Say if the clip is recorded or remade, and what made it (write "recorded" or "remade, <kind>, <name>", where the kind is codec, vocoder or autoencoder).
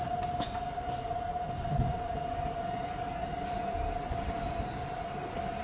recorded